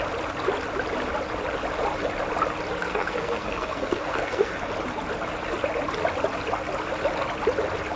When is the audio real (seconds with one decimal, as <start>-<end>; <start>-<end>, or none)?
0.0-2.8; 4.7-8.0

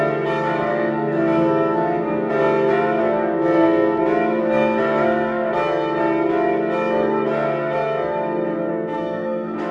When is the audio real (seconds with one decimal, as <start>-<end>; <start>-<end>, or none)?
0.0-0.7; 2.3-3.0; 4.0-4.4; 5.5-8.7

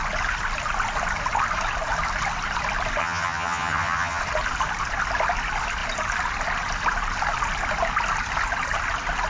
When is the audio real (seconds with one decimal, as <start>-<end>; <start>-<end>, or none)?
0.0-3.0; 4.2-9.3

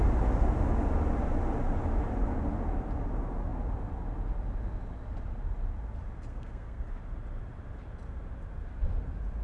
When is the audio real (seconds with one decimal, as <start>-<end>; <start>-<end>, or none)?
0.0-6.3; 7.0-9.4

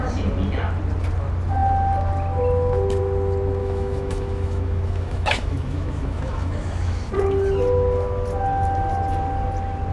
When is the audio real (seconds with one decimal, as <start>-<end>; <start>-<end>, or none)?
0.0-3.6; 7.1-9.9

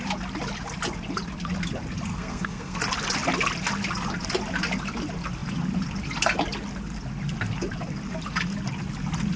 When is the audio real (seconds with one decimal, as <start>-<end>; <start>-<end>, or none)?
0.0-2.1; 2.8-9.4